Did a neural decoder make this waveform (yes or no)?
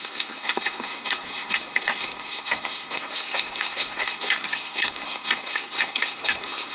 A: yes